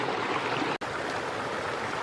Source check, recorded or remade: recorded